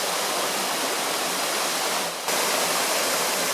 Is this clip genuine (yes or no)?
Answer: yes